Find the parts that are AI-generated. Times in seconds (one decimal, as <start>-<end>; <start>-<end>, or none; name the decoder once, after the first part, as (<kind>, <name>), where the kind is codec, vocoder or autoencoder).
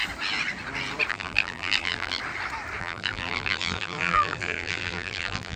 1.1-2.2 (vocoder, BigVGAN v2); 2.8-5.6